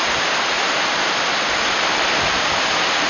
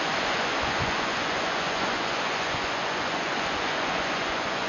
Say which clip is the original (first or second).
first